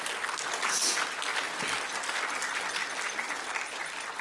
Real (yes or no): yes